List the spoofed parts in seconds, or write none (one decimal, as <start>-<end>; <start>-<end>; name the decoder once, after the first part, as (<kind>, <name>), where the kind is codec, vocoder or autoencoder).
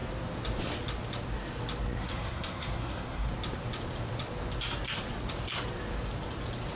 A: 2.0-3.3 (codec, SNAC)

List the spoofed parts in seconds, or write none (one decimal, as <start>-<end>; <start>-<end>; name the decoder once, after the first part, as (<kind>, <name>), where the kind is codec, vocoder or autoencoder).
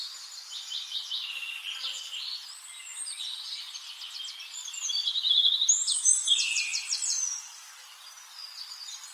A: none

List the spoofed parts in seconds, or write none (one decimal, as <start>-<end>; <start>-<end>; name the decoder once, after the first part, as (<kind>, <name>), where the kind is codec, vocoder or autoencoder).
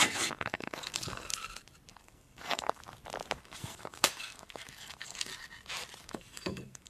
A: 0.0-1.3 (codec, SNAC); 1.9-2.8; 3.4-5.3; 6.0-6.9